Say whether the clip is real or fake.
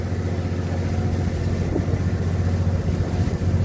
real